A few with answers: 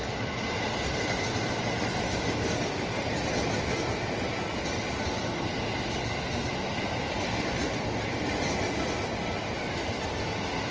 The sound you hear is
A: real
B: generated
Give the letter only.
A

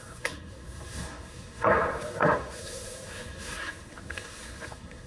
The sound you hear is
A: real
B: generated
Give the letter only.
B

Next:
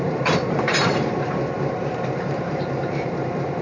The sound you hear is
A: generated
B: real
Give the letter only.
A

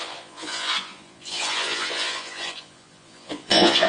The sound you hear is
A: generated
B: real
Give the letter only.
A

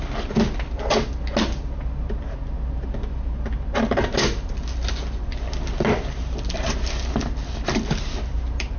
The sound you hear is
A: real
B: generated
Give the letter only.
A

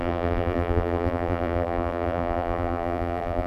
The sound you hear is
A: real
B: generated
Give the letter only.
B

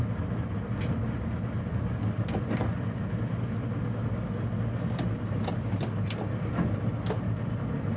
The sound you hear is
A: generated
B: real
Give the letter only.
B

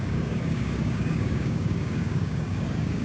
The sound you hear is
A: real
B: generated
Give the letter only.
B